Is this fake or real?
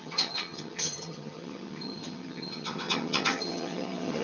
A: fake